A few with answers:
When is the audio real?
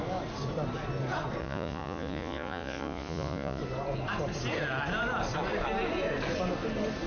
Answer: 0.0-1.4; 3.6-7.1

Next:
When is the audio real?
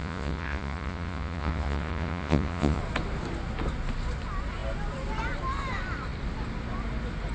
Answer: 2.8-7.3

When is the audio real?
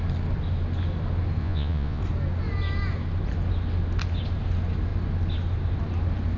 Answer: 0.0-1.4; 2.0-6.4